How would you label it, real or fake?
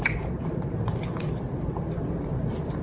fake